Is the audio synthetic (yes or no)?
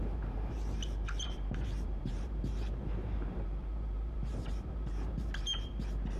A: yes